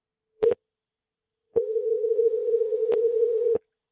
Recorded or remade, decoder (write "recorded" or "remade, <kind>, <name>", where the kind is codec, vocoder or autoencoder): remade, vocoder, Vocos